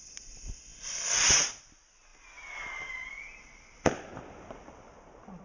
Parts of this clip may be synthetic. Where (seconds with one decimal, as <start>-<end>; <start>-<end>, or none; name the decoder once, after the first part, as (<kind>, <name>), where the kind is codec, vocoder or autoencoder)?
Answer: none